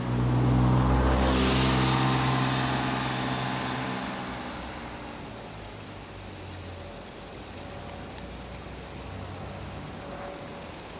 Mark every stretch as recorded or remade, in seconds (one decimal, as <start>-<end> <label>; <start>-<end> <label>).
0.0-11.0 recorded